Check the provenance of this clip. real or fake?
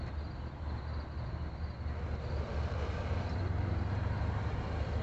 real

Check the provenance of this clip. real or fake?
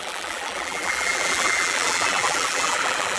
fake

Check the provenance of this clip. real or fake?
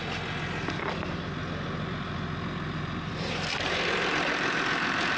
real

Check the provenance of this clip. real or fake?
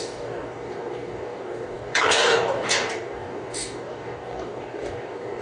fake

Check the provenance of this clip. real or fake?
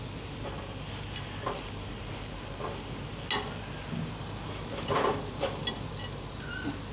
real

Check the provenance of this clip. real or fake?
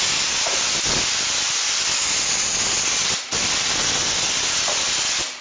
real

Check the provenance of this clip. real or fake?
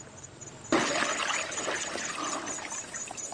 real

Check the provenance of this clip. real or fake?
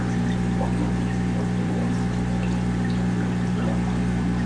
fake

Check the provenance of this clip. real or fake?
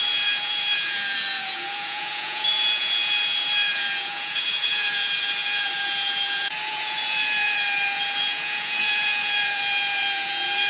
fake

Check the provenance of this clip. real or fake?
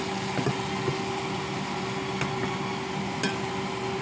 real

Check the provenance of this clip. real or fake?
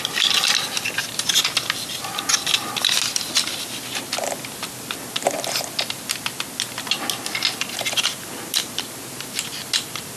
real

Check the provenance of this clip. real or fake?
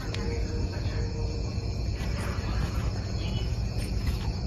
fake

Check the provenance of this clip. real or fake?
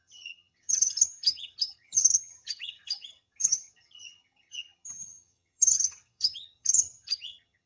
fake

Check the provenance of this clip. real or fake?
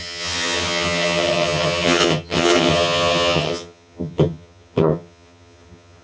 fake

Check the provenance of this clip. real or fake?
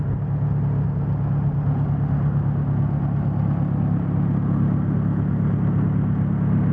real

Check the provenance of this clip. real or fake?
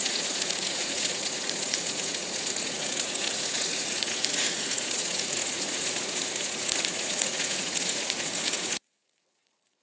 fake